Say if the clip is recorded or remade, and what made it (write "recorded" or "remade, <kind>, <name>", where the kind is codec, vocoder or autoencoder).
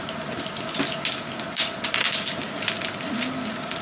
recorded